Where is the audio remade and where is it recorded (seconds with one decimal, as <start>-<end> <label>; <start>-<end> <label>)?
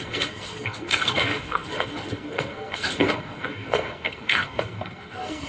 0.0-5.5 remade